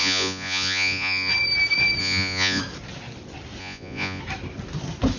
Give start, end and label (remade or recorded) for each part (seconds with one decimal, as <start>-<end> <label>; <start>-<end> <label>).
0.0-1.3 remade; 1.3-2.0 recorded; 2.0-2.6 remade; 2.6-3.6 recorded; 3.6-4.2 remade; 4.2-5.2 recorded